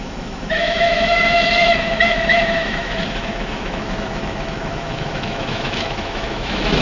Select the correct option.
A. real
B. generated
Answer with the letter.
B